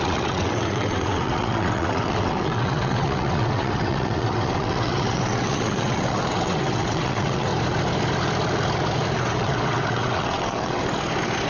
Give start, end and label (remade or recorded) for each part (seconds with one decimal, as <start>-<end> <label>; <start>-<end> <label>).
0.0-7.5 remade; 7.5-9.2 recorded; 9.2-10.8 remade; 10.8-11.5 recorded